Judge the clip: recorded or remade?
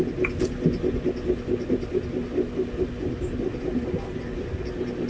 recorded